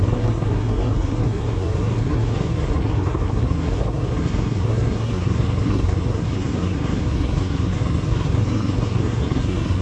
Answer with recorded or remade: remade